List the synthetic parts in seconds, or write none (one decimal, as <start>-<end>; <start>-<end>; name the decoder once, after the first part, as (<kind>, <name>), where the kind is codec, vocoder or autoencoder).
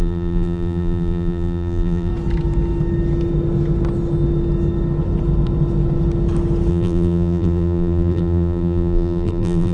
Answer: 0.0-2.1 (vocoder, BigVGAN v2); 6.7-9.7